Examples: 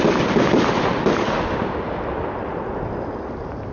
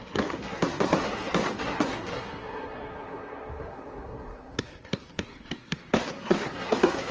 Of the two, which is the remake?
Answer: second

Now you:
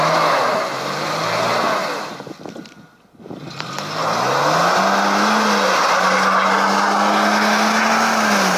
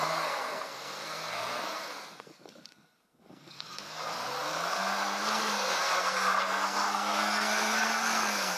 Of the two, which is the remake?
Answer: second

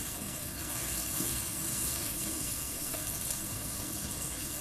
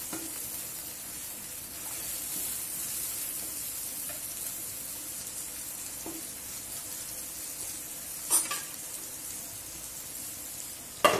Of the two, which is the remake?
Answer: first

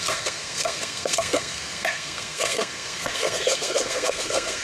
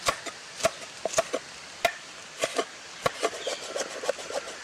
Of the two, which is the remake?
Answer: first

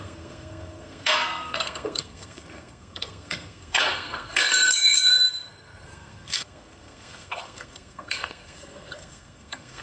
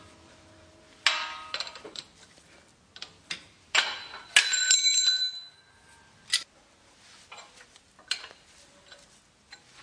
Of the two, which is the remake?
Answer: first